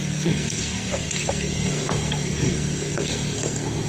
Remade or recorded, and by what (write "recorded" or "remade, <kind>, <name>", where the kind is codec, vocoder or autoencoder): remade, codec, SNAC